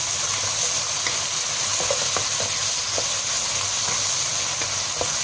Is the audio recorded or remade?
recorded